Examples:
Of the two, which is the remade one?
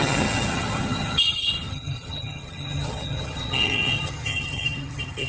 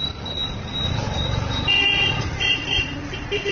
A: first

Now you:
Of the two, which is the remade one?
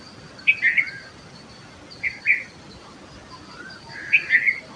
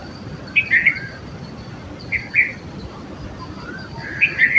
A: second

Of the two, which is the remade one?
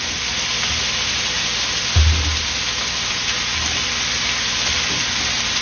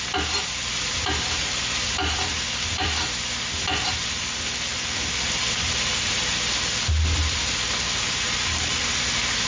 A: second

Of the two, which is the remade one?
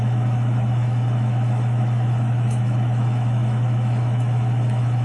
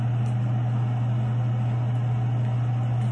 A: first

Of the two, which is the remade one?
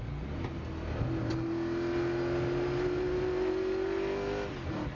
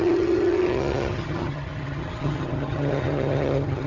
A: second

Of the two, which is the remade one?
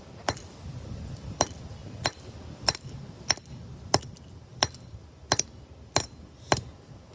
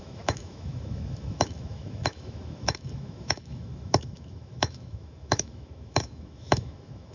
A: second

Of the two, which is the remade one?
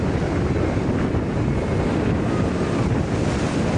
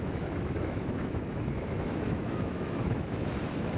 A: second